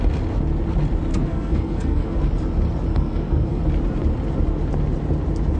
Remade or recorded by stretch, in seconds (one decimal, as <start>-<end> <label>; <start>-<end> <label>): 0.0-1.1 recorded; 1.1-2.2 remade; 2.2-2.9 recorded; 2.9-3.6 remade; 3.6-5.6 recorded